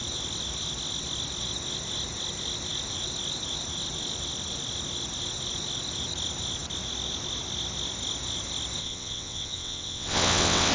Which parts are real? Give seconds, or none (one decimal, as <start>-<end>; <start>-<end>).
0.0-8.8